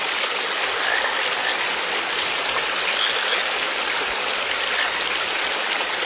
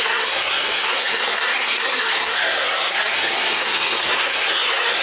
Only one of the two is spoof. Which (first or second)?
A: second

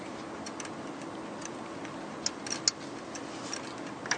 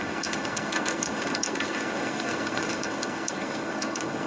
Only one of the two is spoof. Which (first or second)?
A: second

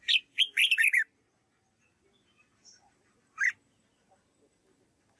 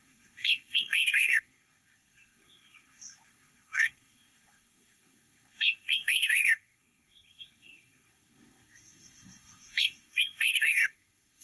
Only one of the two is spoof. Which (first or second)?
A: second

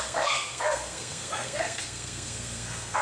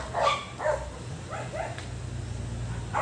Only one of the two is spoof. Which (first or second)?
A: first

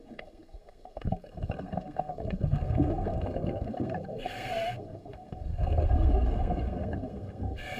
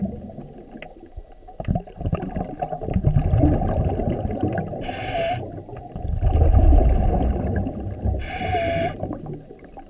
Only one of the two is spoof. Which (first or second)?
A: first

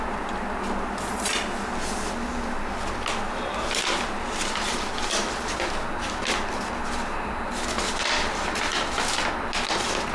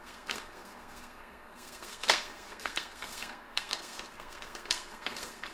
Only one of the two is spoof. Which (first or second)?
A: second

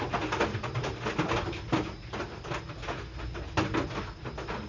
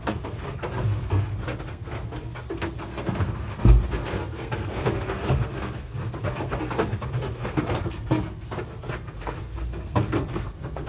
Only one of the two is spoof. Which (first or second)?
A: second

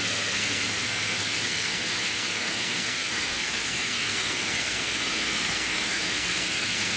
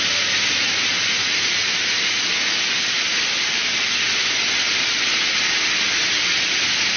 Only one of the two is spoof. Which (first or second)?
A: first